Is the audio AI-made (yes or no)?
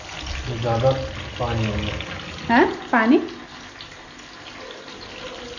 no